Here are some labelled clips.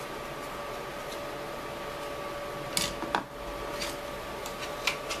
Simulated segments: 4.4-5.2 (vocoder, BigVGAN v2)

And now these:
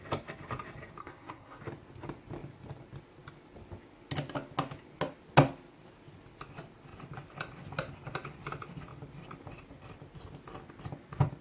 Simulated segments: 1.0-1.6 (codec, SNAC)